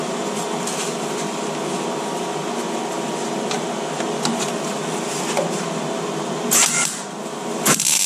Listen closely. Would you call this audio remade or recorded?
recorded